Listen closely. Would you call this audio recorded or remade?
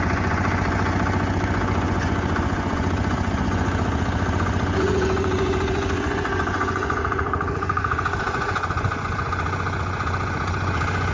remade